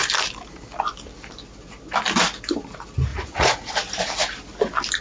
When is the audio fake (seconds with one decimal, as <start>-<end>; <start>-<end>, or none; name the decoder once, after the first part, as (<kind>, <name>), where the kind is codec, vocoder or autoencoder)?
3.1-3.7 (vocoder, Vocos)